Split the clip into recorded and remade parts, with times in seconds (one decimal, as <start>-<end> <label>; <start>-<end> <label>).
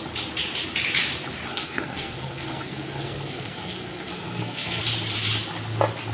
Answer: 0.0-1.5 recorded; 1.5-4.8 remade; 4.8-6.1 recorded